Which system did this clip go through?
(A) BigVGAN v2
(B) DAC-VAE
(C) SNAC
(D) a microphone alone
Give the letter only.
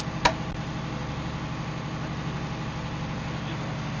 D